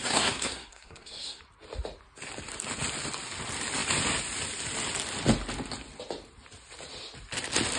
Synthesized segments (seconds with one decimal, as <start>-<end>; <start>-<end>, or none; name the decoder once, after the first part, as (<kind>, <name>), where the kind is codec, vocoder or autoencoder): 0.0-1.4 (codec, SNAC)